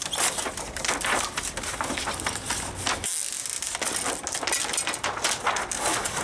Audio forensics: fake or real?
real